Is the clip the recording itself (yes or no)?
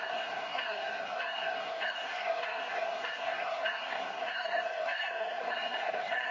no